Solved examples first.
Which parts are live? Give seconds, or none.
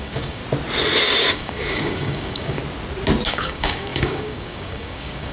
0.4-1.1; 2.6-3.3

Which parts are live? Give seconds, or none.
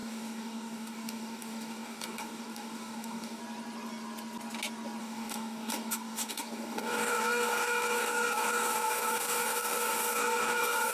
3.4-5.0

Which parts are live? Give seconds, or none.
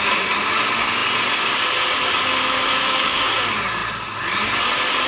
0.0-2.7; 3.2-5.1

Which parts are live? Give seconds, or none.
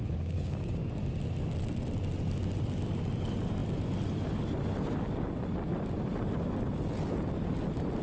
0.9-8.0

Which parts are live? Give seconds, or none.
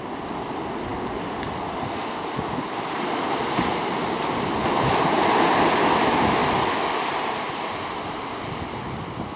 0.0-9.4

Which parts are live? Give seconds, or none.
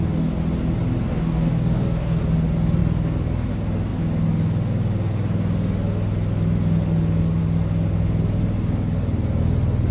0.0-1.1; 2.2-9.9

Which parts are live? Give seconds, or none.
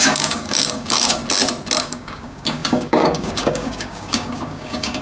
1.2-1.8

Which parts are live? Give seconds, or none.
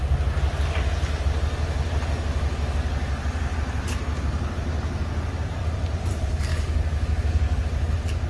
0.0-6.5; 7.6-8.3